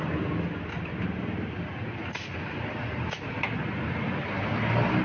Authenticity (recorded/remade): recorded